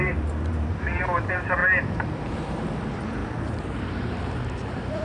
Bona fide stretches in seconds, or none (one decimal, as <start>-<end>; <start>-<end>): none